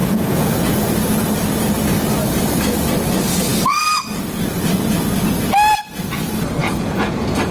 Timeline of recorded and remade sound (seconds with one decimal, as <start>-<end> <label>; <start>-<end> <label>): 0.0-0.5 remade; 0.5-6.6 recorded; 6.6-7.5 remade